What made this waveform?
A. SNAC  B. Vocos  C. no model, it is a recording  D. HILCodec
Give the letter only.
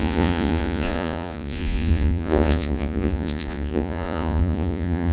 B